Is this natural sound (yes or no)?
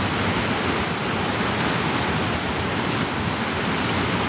yes